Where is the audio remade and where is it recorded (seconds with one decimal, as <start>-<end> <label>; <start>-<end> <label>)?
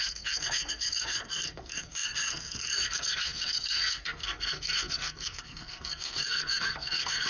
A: 0.0-7.3 remade